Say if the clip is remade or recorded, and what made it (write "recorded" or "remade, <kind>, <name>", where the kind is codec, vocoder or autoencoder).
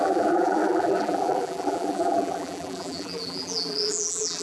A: remade, vocoder, BigVGAN v2